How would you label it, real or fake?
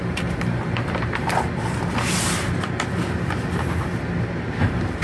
fake